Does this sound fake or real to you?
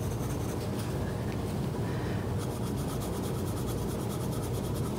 fake